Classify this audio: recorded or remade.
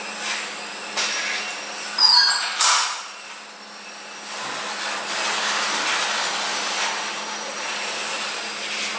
recorded